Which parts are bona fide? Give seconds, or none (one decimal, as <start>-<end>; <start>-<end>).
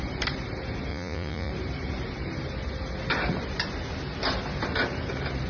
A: 0.0-0.9; 1.5-5.5